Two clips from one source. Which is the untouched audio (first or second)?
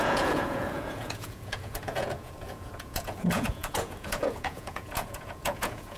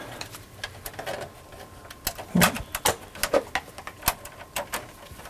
second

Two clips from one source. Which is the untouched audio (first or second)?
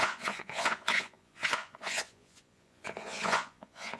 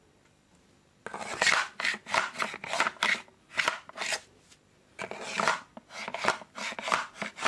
second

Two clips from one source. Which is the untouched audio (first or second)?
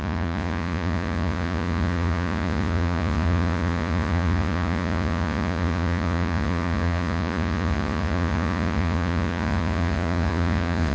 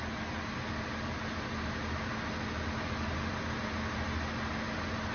second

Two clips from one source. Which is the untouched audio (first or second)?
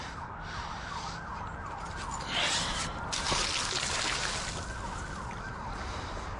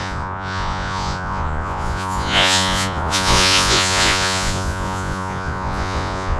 first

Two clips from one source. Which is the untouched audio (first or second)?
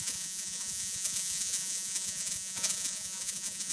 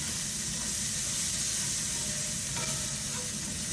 second